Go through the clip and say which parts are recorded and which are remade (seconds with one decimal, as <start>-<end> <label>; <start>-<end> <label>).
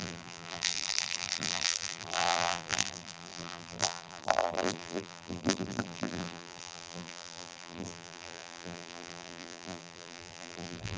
0.0-11.0 remade